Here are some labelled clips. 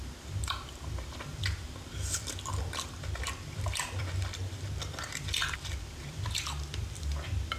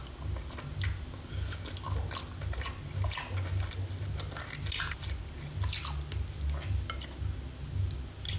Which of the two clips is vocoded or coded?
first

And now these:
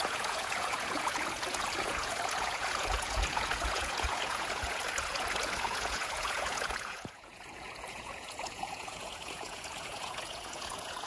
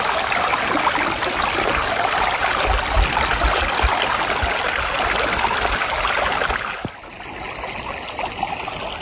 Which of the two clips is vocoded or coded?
first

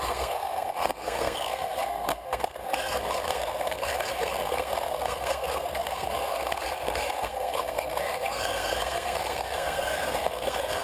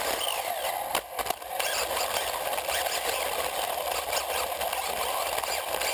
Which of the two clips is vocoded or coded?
first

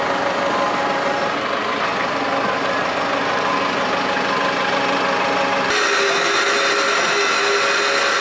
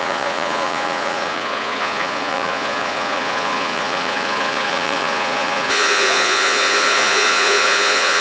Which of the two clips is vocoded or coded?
second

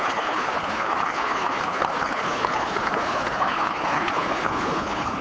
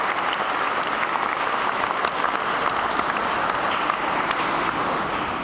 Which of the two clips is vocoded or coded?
first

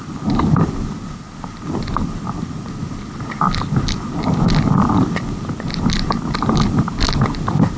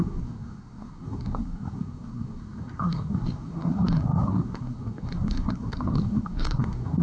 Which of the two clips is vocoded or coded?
second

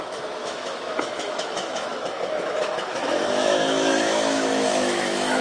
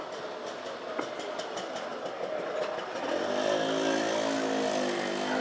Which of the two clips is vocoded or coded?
first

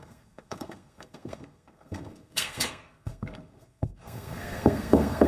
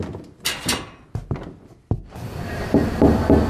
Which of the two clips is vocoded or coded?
first